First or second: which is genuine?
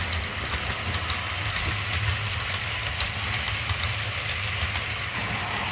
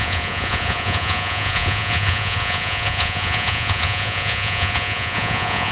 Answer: first